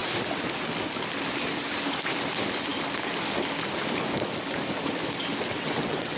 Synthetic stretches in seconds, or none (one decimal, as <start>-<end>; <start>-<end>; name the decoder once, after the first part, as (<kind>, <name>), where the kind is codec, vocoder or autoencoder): 5.5-6.2 (vocoder, WaveNeXt)